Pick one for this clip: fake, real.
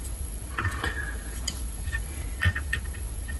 fake